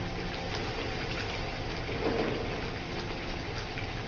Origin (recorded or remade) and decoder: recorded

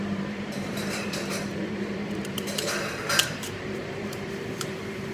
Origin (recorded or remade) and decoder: remade, vocoder, BigVGAN v2